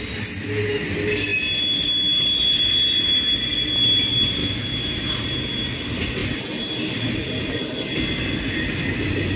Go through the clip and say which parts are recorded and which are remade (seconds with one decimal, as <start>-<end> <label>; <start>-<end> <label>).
0.0-4.4 recorded; 4.4-5.1 remade; 5.1-9.4 recorded